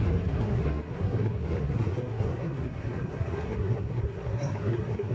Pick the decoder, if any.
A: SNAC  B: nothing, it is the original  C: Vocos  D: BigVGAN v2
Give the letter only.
A